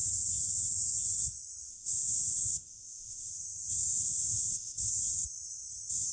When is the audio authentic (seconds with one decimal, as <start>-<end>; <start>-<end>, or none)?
0.0-1.7; 3.3-4.0; 4.9-6.1